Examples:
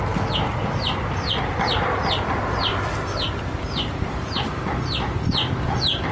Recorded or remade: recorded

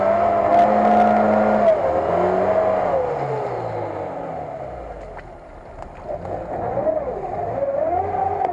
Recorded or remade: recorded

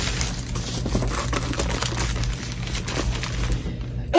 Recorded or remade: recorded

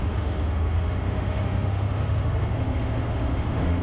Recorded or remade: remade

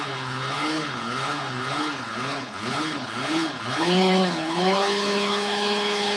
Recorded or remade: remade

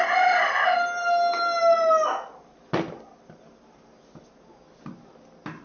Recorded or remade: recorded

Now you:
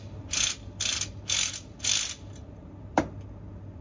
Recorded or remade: recorded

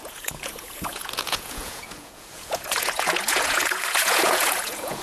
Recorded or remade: remade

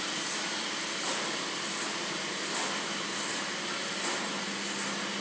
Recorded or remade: recorded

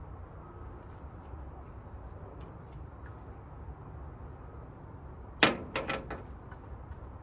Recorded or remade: recorded